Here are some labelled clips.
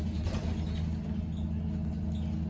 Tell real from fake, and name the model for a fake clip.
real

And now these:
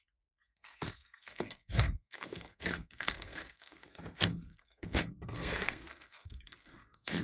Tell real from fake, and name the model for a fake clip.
fake, codec, SNAC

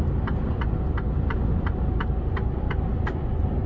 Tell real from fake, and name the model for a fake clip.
real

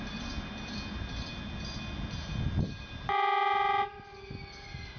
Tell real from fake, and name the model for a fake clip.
real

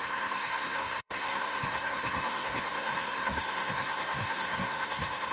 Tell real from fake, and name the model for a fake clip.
fake, codec, SNAC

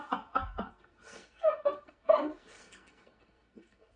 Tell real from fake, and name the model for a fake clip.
fake, codec, SNAC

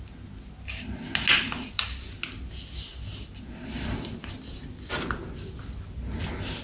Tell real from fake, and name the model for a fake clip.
real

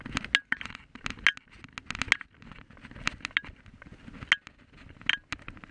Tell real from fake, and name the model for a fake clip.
real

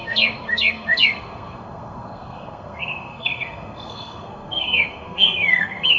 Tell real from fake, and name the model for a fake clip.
fake, codec, SNAC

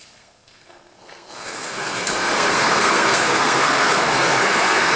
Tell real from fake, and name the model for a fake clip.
fake, codec, SNAC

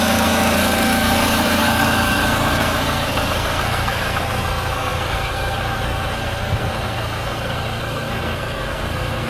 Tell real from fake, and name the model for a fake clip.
fake, codec, SNAC